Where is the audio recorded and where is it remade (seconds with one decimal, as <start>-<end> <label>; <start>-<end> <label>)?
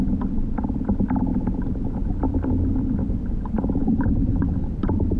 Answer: 0.0-3.8 recorded; 3.8-4.7 remade; 4.7-5.2 recorded